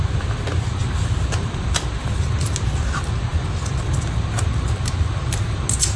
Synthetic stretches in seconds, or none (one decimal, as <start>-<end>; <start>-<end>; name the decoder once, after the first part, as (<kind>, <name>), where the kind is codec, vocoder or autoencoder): none